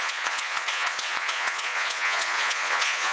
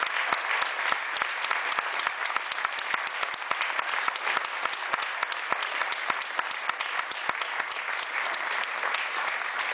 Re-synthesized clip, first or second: first